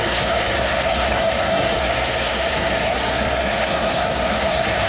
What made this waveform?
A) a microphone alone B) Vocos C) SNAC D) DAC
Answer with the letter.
C